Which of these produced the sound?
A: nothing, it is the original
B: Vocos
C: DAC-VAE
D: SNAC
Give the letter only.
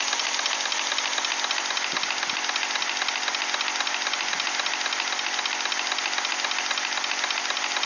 A